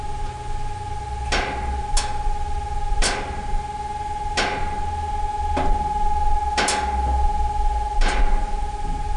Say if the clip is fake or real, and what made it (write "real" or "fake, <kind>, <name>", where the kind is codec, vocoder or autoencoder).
real